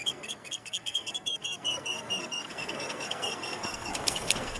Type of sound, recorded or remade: remade